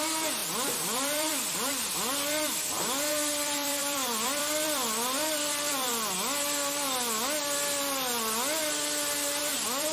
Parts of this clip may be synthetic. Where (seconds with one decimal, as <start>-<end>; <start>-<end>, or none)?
0.0-5.9; 9.4-9.9